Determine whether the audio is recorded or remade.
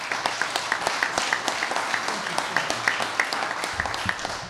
recorded